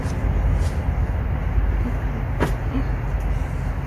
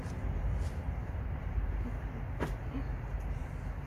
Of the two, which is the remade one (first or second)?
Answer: second